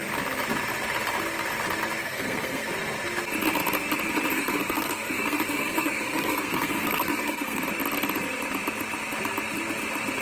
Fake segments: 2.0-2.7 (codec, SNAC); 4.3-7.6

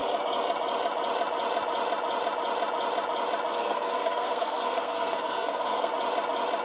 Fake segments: 3.5-5.9 (codec, SNAC)